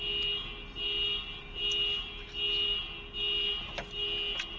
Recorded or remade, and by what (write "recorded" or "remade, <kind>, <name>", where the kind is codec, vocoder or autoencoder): recorded